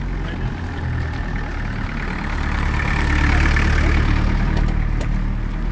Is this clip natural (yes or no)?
yes